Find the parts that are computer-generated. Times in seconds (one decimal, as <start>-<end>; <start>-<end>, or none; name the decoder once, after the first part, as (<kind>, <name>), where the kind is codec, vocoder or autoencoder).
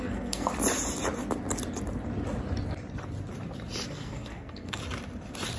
0.0-0.5 (codec, SNAC); 3.9-4.8